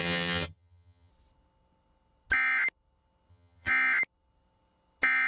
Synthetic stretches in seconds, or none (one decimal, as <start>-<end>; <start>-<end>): 0.0-1.1; 3.3-3.7